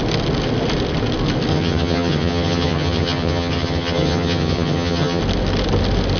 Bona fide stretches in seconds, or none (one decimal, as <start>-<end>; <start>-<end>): 0.0-1.5; 5.2-6.2